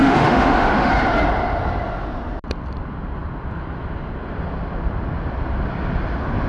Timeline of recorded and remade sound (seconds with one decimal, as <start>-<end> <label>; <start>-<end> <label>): 0.0-0.9 remade; 0.9-6.5 recorded